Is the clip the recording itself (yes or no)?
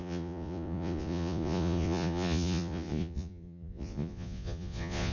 no